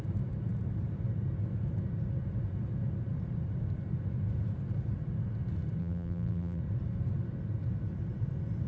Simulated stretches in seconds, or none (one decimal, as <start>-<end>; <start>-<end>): 5.8-6.6